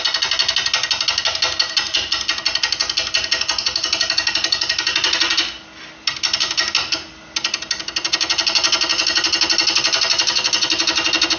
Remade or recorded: recorded